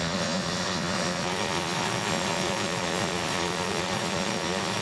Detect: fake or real fake